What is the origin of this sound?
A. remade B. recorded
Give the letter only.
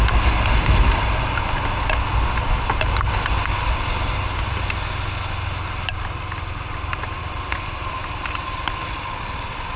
B